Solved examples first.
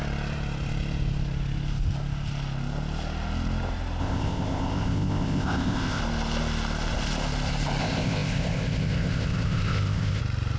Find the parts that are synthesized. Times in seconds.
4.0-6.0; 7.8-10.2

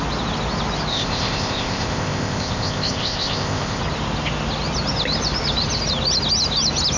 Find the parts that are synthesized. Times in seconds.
0.9-3.8

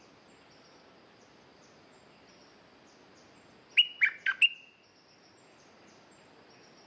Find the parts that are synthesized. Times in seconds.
none

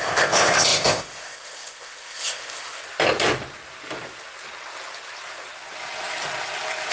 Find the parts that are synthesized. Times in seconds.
0.0-2.8